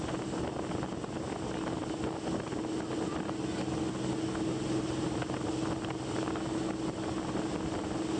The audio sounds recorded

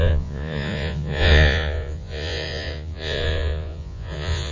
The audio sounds remade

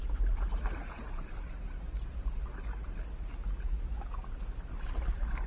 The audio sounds recorded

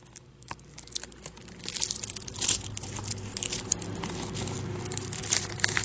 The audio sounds recorded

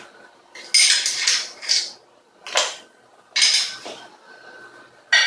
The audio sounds recorded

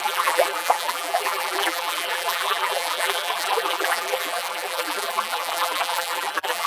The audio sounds remade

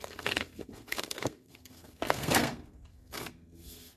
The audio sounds remade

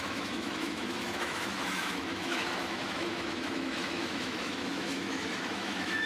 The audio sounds remade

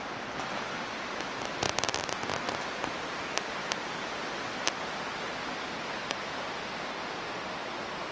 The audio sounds recorded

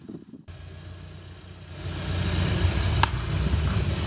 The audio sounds recorded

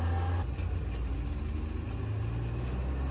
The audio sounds recorded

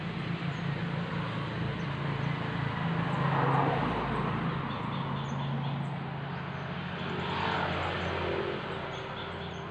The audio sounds recorded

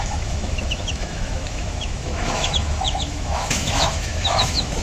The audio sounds remade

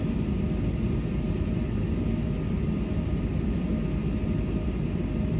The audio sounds recorded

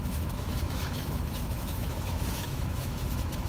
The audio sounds remade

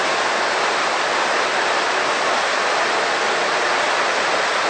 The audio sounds recorded